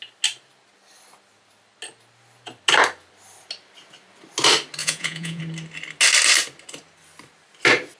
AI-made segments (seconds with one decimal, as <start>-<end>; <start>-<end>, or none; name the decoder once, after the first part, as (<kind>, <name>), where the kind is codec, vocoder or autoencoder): 4.8-5.4 (vocoder, Vocos)